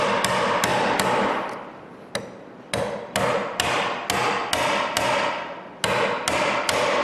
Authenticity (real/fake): real